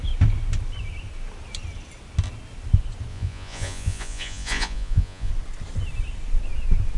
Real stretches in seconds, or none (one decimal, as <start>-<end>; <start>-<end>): 0.0-3.1; 5.3-7.0